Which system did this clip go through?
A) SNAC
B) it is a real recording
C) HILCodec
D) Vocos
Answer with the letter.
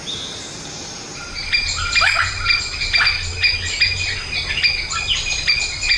B